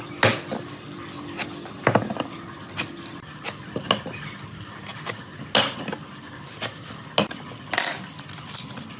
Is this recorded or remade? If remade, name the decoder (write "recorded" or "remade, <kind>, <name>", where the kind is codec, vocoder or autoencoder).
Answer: recorded